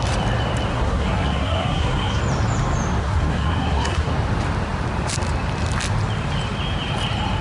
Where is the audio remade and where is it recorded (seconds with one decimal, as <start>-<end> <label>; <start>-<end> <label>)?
0.0-0.7 recorded; 0.7-2.2 remade; 2.2-3.0 recorded; 3.0-4.1 remade; 4.1-7.4 recorded